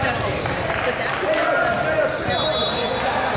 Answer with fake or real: real